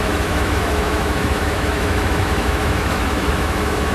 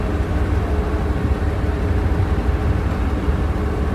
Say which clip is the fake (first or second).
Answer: first